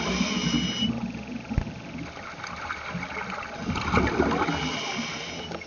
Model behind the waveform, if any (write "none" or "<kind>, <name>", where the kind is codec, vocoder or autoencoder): none